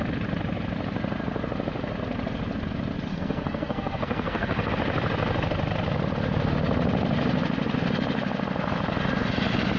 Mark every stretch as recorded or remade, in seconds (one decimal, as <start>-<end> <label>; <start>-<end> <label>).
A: 0.0-3.1 recorded; 3.1-4.7 remade; 4.7-9.8 recorded